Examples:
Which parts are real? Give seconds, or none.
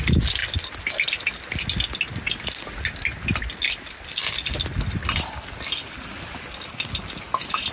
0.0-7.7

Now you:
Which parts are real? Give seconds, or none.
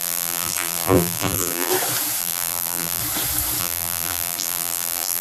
1.7-2.2; 3.0-3.6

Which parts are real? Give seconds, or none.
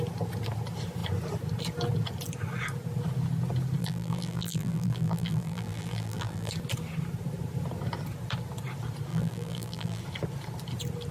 0.0-3.8; 6.5-9.1; 10.0-11.1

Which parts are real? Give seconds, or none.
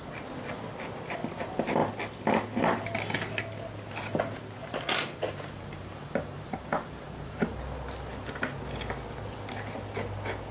0.0-4.6; 7.6-10.5